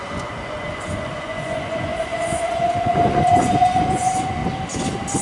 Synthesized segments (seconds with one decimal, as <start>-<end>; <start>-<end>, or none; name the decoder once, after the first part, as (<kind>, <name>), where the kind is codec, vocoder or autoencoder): 0.0-4.4 (vocoder, Vocos)